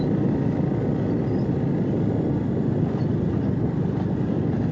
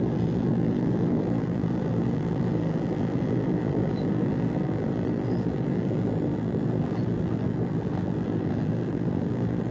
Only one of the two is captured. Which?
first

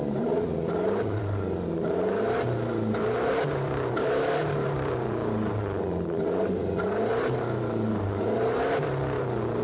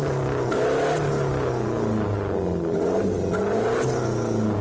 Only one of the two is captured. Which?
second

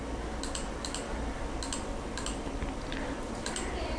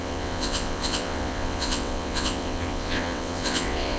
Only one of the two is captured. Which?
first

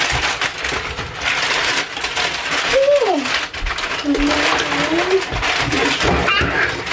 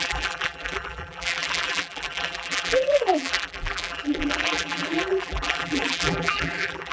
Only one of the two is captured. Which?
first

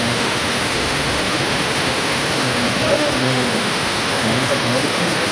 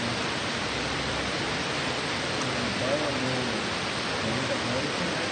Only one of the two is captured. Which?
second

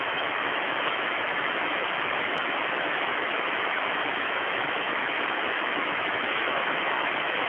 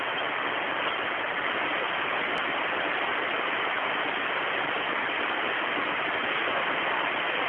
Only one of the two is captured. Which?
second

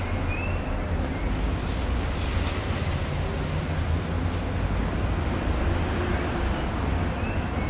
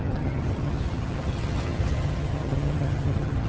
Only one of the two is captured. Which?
first